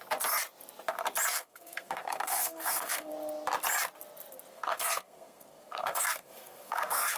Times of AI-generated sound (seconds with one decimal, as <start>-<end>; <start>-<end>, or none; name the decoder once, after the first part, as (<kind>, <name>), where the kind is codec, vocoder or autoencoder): 1.3-3.1 (codec, SNAC); 4.5-7.2